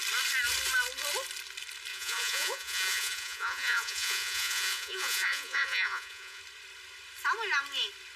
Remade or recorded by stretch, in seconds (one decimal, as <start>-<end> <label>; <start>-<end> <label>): 0.0-1.9 recorded; 1.9-6.4 remade; 6.4-8.2 recorded